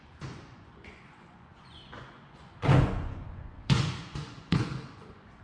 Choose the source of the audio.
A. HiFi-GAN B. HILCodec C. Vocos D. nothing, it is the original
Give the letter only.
C